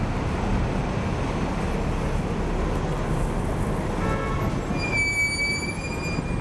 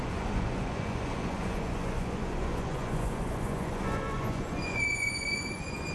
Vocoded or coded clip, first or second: second